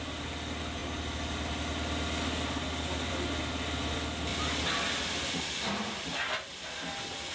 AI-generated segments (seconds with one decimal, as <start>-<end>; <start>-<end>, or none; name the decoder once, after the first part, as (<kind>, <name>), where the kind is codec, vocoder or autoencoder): none